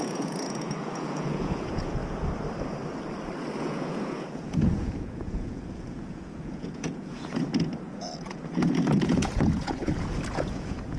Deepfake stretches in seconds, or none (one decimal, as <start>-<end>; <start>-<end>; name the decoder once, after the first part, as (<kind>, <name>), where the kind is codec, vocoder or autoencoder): 0.0-2.0 (vocoder, Vocos); 3.6-11.0